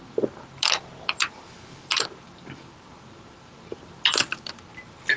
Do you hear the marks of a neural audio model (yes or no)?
no